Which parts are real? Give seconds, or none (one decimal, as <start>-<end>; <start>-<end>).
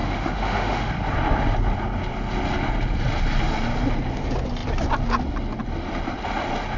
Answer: 0.9-6.8